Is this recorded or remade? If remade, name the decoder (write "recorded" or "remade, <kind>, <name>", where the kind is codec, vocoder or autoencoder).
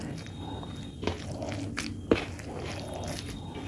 recorded